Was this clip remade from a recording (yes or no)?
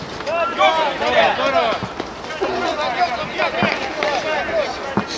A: no